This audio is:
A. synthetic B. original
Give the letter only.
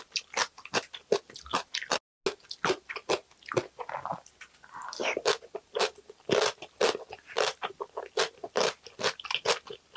B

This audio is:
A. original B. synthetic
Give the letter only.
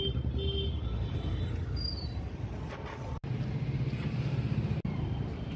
A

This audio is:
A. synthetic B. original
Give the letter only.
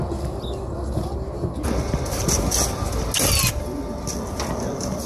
B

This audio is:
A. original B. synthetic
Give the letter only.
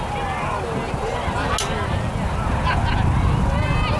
A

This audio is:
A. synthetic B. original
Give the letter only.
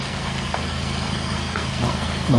A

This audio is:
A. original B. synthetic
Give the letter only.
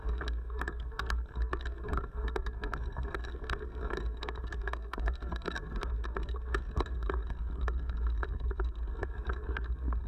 B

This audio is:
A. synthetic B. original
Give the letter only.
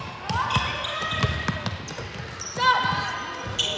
B